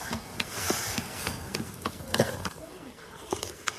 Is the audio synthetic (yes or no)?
yes